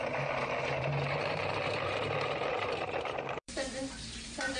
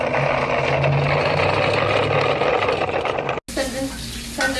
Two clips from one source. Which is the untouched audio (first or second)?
second